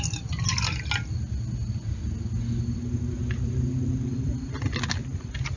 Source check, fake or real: real